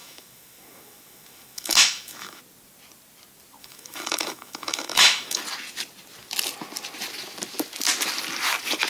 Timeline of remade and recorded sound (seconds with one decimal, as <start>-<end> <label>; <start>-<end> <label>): 0.0-2.4 remade; 2.4-3.6 recorded; 3.6-5.4 remade; 5.4-8.9 recorded